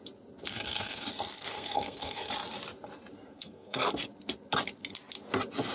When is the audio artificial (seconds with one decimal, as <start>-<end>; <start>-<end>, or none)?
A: 0.5-1.1; 1.5-2.3; 3.3-3.9